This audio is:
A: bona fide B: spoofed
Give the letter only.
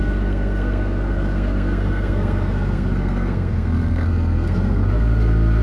B